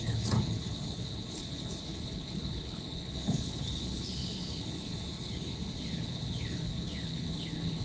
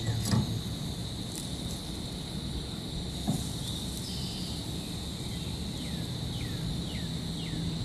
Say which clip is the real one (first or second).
second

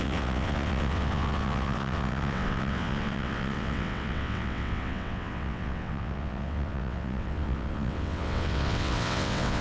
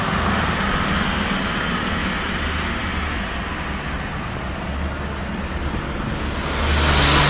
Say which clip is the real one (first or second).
second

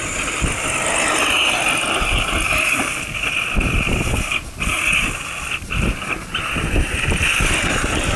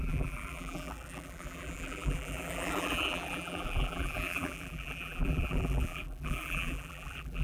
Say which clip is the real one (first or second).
first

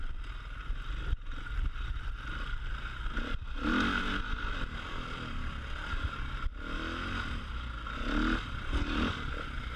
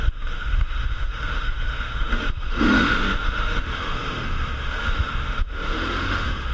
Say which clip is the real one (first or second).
first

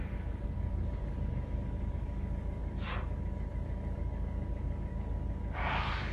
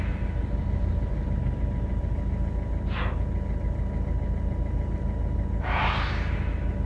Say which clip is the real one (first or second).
second